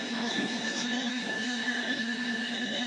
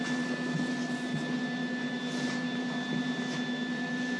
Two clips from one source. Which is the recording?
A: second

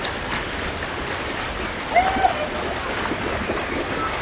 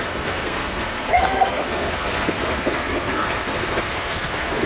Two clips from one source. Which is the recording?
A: first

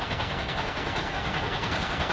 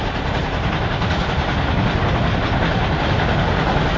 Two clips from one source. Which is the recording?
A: second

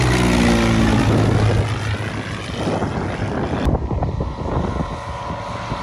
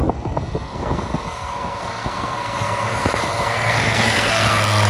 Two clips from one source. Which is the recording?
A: first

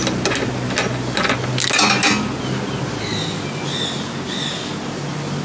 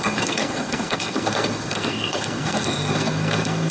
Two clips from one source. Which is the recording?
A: first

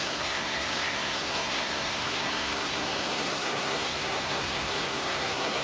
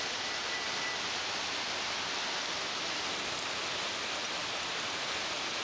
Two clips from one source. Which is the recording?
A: second